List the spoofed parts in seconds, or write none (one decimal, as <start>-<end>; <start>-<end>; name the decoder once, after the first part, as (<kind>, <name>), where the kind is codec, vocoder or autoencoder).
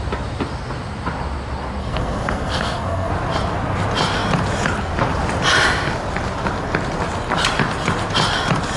1.8-3.1 (codec, SNAC)